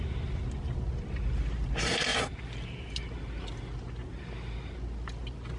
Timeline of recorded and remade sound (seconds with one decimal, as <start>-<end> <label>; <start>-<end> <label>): 0.0-5.6 recorded